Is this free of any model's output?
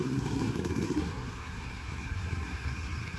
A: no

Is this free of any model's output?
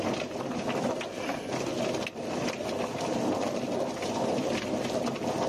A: yes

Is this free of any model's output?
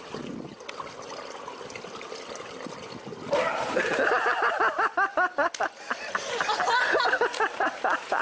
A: yes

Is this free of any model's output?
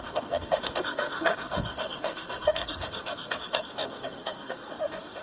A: no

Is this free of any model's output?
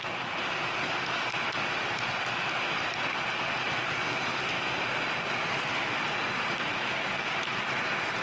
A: yes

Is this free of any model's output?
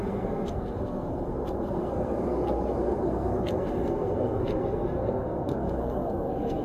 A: no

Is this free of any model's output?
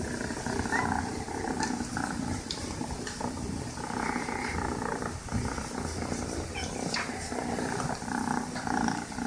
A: yes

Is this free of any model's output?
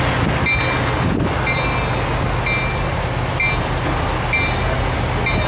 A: yes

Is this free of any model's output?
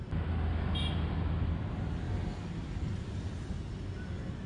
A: yes